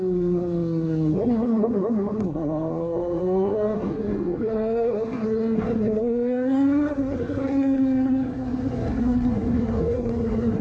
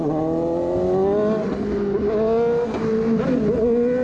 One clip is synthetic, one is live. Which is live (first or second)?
second